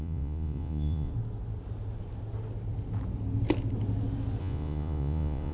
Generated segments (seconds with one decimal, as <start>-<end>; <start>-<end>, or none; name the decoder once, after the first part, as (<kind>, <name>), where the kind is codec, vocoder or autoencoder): 0.0-1.1 (vocoder, Vocos); 4.4-5.5